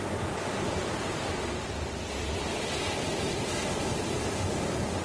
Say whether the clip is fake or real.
fake